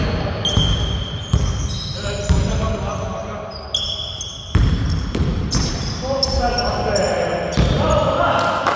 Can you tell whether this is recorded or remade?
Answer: recorded